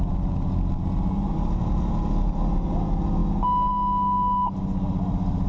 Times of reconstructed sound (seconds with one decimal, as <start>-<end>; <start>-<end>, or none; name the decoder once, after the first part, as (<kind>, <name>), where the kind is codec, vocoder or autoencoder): none